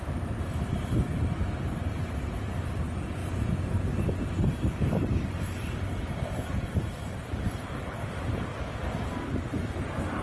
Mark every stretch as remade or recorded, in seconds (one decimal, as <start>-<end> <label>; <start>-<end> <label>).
0.0-3.2 remade; 3.2-4.8 recorded; 4.8-10.2 remade